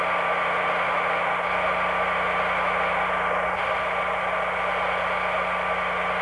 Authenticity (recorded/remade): recorded